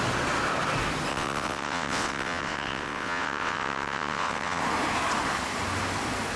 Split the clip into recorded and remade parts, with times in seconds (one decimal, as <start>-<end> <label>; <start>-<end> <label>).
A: 0.0-1.1 recorded; 1.1-4.6 remade; 4.6-6.4 recorded